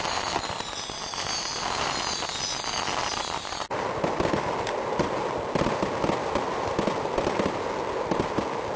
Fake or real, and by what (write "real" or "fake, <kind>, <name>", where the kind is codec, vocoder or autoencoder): real